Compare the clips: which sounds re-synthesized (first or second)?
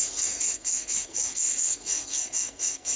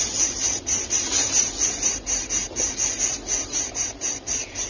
first